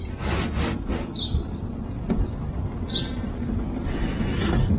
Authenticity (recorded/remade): recorded